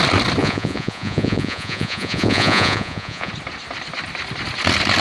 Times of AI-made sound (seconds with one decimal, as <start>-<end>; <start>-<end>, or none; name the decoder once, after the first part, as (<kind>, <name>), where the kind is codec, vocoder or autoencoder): 0.4-3.3 (vocoder, Vocos)